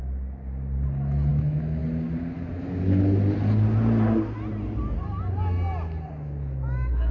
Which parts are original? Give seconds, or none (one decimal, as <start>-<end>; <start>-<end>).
0.0-1.3; 1.8-6.1